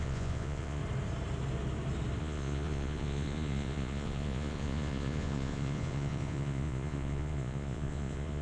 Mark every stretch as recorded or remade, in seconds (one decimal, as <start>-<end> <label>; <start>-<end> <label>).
0.0-0.8 remade; 0.8-2.2 recorded; 2.2-8.4 remade

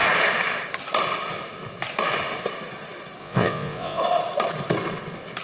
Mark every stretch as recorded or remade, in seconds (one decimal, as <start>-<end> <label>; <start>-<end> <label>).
0.0-3.2 recorded; 3.2-4.0 remade; 4.0-5.4 recorded

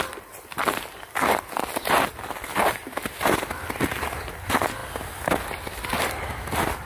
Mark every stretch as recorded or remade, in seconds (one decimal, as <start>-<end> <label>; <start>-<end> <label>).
0.0-6.9 recorded

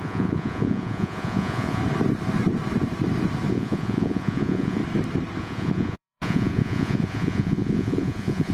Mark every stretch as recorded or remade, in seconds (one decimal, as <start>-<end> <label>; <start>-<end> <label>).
0.0-1.8 remade; 1.8-3.5 recorded; 3.5-4.8 remade; 4.8-5.4 recorded; 5.4-8.5 remade